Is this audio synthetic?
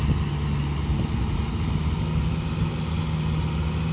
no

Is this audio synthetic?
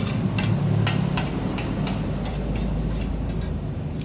no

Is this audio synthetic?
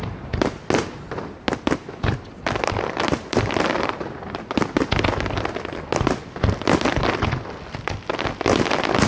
no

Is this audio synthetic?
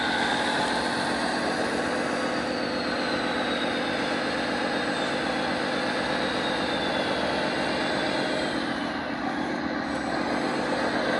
no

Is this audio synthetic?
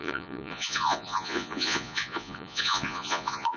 yes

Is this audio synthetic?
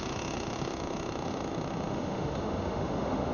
yes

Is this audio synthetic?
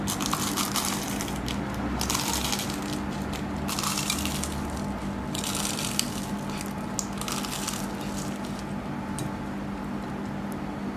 no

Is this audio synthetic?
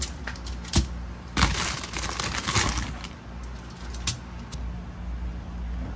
no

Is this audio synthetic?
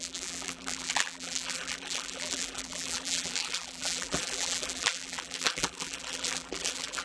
yes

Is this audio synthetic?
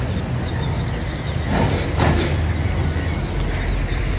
no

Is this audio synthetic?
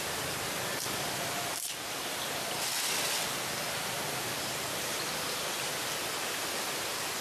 no